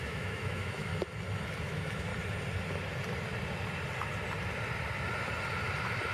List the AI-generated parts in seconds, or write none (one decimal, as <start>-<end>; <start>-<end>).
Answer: 0.0-0.9; 1.6-2.1